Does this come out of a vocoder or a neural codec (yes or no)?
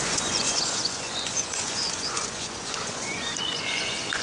yes